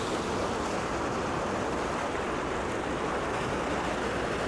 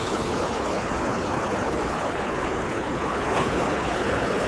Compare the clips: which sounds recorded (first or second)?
first